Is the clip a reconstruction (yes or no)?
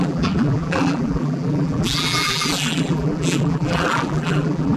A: yes